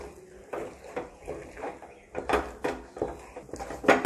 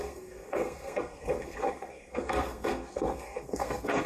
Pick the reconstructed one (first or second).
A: second